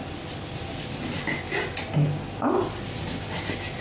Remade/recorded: recorded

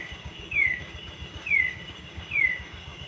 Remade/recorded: remade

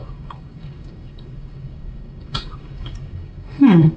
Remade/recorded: remade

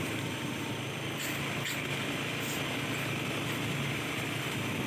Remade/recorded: recorded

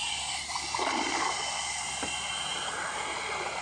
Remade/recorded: recorded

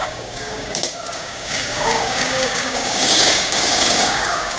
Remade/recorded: remade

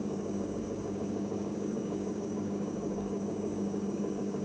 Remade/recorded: remade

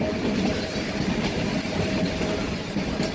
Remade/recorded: recorded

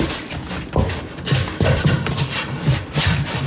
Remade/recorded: recorded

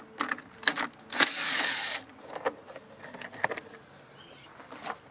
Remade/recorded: recorded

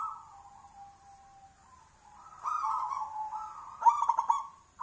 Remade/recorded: recorded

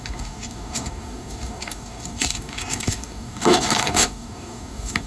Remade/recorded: remade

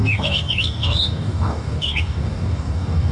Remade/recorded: remade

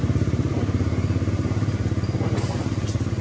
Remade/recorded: recorded